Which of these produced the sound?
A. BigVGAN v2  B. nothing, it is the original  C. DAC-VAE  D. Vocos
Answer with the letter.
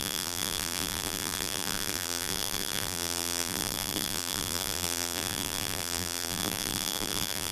A